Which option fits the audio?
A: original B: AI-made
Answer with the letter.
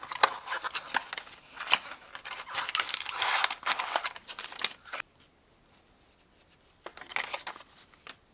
A